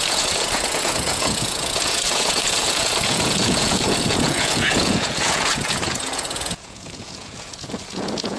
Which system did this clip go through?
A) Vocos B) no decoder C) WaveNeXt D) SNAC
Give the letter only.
A